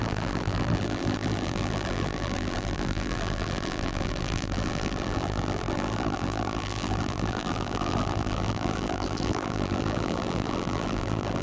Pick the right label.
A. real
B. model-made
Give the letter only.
B